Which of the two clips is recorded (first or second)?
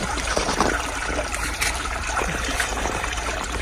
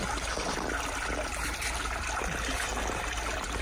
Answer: second